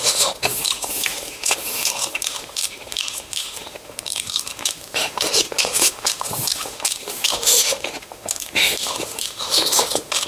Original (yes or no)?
no